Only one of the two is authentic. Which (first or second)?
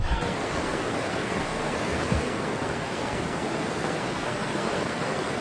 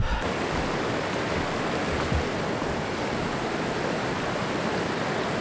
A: second